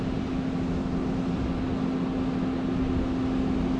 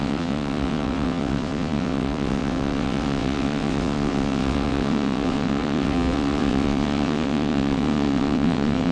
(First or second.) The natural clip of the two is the first